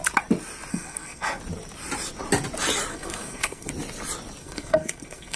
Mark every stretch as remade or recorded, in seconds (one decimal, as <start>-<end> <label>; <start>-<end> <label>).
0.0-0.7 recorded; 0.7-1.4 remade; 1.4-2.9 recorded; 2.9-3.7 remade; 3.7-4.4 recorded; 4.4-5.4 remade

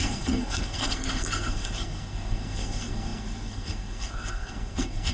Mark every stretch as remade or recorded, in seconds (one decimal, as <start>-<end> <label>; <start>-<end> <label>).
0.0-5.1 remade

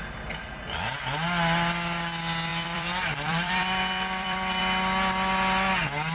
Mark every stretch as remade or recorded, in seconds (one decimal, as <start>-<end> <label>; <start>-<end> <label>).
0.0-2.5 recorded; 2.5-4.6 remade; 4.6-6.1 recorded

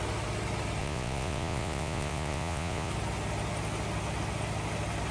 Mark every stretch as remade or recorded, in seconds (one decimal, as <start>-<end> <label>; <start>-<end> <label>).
0.0-0.8 recorded; 0.8-2.9 remade; 2.9-5.1 recorded

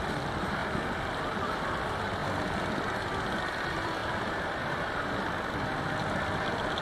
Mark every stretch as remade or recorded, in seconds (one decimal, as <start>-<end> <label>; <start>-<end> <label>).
0.0-0.6 remade; 0.6-1.2 recorded; 1.2-2.2 remade; 2.2-3.4 recorded; 3.4-6.8 remade